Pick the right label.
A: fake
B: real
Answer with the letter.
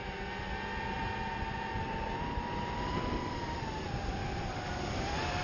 B